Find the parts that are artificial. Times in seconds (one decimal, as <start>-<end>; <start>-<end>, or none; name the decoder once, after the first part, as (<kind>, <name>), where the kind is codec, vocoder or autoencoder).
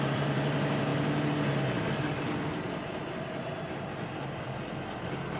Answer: 0.0-0.9 (vocoder, BigVGAN v2); 2.0-5.4